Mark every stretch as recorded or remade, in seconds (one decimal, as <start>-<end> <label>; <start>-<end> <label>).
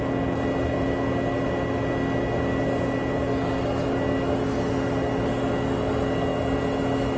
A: 0.0-7.2 recorded